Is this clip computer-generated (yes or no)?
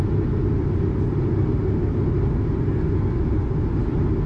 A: no